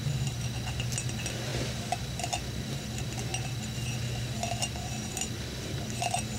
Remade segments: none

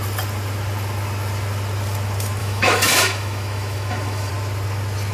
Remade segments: 2.4-4.3 (autoencoder, DAC-VAE)

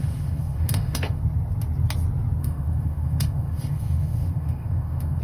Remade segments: 0.0-1.2 (autoencoder, DAC-VAE); 2.4-5.2

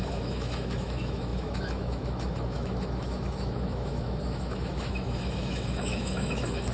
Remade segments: 0.0-6.7 (autoencoder, DAC-VAE)